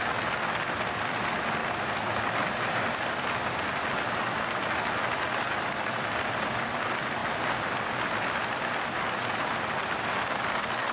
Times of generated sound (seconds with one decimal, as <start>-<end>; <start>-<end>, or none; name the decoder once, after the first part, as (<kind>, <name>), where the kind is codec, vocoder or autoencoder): none